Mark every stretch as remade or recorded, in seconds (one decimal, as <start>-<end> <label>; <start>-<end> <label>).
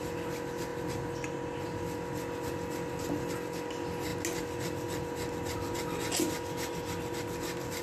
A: 0.0-7.8 recorded